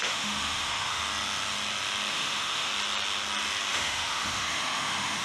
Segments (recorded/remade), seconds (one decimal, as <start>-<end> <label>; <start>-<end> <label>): 0.0-1.0 remade; 1.0-2.1 recorded; 2.1-2.7 remade; 2.7-3.7 recorded; 3.7-5.2 remade